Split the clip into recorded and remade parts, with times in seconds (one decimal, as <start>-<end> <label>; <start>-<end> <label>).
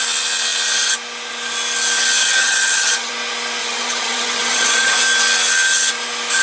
0.0-2.2 recorded; 2.2-3.1 remade; 3.1-3.6 recorded; 3.6-5.0 remade; 5.0-6.4 recorded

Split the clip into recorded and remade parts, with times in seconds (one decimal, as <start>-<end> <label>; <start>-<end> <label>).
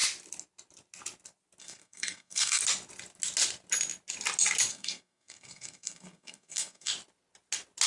0.0-1.6 recorded; 1.6-2.6 remade; 2.6-4.7 recorded; 4.7-6.9 remade; 6.9-7.9 recorded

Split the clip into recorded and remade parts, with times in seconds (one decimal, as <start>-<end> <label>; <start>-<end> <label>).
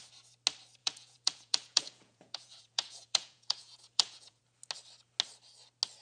0.0-0.8 recorded; 0.8-4.4 remade; 4.4-6.0 recorded